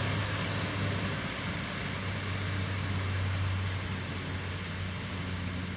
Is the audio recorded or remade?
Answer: recorded